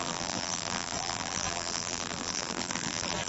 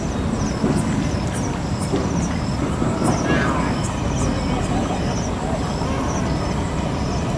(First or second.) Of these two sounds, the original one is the second